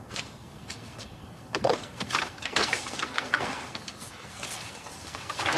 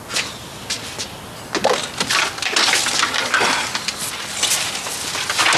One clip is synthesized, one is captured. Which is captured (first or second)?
second